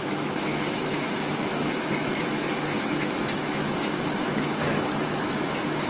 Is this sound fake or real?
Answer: fake